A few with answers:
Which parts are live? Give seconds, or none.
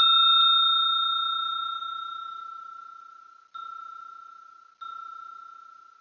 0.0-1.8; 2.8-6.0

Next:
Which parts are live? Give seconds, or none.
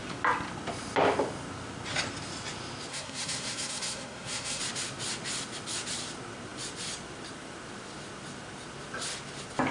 0.0-2.9; 4.6-9.7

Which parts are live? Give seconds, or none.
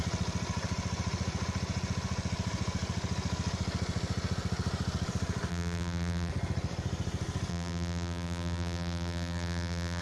0.0-5.5; 6.3-7.5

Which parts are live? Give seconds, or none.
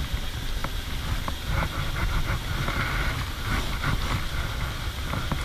0.6-3.8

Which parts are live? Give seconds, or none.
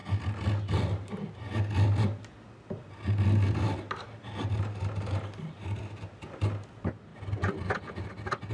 0.0-8.5